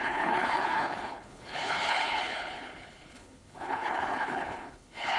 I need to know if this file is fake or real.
fake